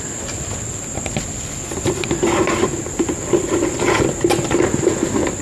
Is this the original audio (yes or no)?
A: yes